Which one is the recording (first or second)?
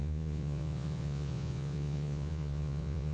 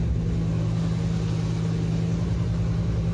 second